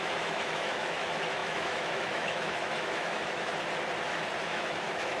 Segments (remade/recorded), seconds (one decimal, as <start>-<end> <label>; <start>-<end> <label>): 0.0-3.5 remade; 3.5-4.4 recorded; 4.4-5.2 remade